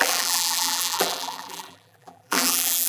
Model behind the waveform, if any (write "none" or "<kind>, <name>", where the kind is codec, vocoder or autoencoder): vocoder, BigVGAN v2